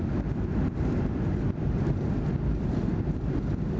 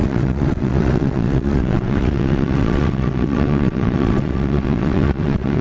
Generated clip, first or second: second